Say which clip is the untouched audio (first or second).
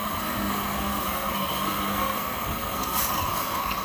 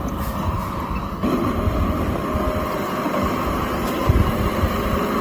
second